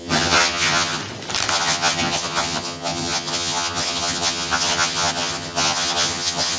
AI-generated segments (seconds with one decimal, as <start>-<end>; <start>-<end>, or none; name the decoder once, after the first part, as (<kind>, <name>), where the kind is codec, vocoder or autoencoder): 0.0-1.0 (vocoder, HiFi-GAN); 1.5-6.6